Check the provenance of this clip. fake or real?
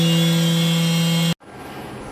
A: real